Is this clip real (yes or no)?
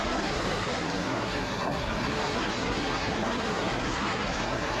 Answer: no